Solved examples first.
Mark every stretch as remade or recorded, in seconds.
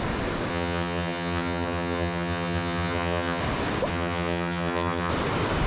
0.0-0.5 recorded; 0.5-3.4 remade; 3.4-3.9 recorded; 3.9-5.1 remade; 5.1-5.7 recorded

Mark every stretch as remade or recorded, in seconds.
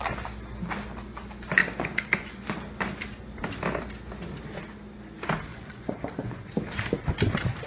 0.0-1.6 recorded; 1.6-2.6 remade; 2.6-5.5 recorded; 5.5-6.5 remade; 6.5-7.7 recorded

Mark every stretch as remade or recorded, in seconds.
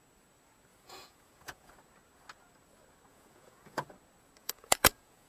0.0-0.7 recorded; 0.7-1.7 remade; 1.7-3.1 recorded; 3.1-3.9 remade; 3.9-4.4 recorded; 4.4-5.3 remade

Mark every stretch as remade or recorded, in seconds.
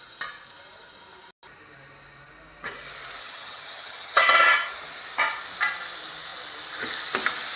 0.0-3.2 recorded; 3.2-4.7 remade; 4.7-7.6 recorded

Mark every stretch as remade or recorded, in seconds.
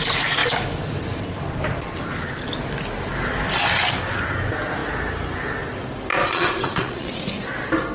0.0-6.1 recorded; 6.1-7.2 remade; 7.2-7.9 recorded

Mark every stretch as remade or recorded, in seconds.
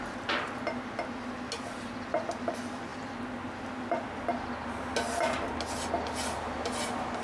0.0-7.2 recorded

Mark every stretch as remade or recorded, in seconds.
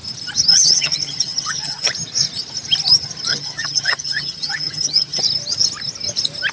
0.0-0.5 recorded; 0.5-1.9 remade; 1.9-3.3 recorded; 3.3-5.2 remade; 5.2-6.5 recorded